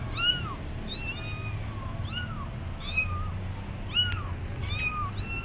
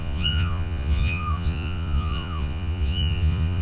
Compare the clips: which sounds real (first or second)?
first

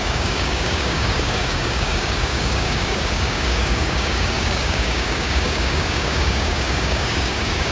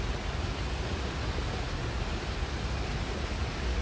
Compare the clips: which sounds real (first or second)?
second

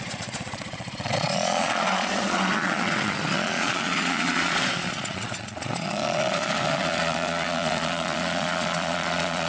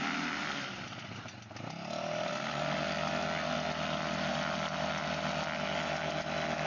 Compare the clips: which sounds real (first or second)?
second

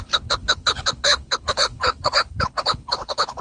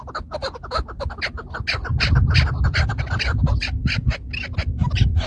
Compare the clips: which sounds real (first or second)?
second